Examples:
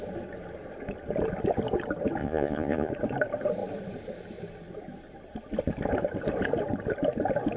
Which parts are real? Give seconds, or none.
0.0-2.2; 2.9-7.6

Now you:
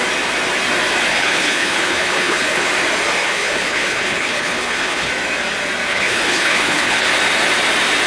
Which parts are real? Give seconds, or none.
0.0-1.1; 2.7-3.2; 5.1-5.9; 7.1-8.1

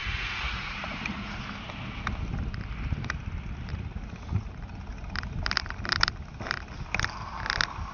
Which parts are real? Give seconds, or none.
1.4-3.7; 4.5-7.9

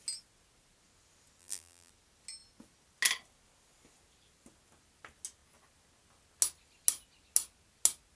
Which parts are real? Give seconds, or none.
0.0-1.4; 1.9-8.2

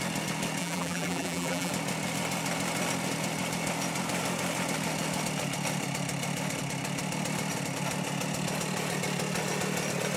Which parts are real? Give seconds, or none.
0.0-0.6; 1.7-10.2

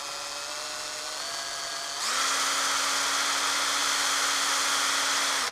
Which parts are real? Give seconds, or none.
0.0-5.5

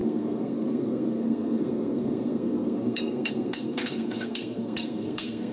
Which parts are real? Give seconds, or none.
none